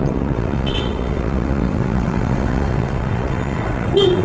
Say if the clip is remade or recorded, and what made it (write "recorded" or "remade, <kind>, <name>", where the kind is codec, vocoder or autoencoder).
remade, vocoder, WaveNeXt